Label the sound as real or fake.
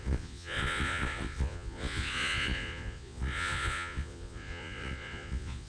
fake